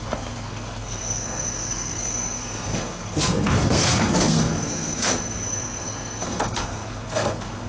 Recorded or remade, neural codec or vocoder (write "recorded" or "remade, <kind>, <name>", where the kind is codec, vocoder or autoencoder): remade, codec, SNAC